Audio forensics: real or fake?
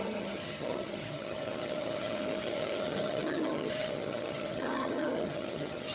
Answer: fake